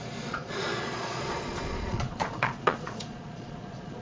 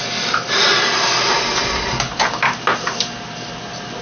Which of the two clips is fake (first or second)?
first